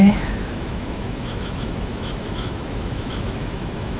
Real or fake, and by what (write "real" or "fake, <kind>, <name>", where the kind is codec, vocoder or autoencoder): fake, autoencoder, DAC-VAE